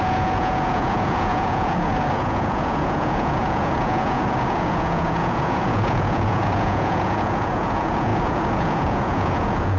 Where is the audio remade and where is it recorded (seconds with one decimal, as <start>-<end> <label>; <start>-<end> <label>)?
0.0-9.8 remade